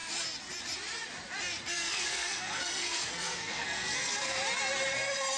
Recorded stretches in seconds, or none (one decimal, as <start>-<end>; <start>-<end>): 0.0-1.7; 4.4-5.4